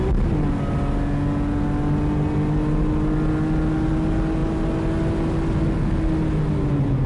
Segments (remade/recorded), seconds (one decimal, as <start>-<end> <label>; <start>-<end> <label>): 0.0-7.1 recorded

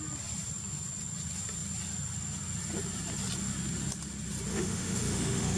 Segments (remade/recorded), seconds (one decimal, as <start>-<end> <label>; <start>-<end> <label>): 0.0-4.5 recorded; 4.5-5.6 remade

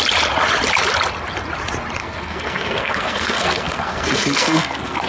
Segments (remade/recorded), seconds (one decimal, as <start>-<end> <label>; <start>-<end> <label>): 0.0-2.0 recorded; 2.0-5.1 remade